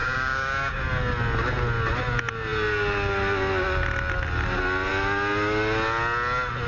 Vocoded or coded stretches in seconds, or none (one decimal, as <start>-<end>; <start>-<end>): 0.0-0.8